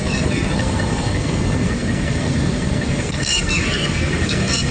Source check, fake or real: fake